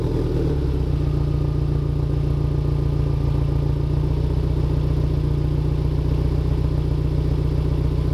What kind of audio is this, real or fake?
real